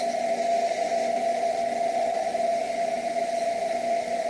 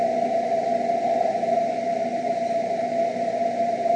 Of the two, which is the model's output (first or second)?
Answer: second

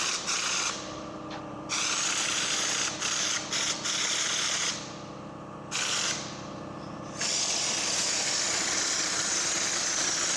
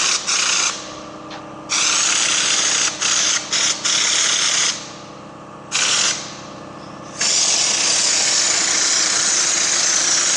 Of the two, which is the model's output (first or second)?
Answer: first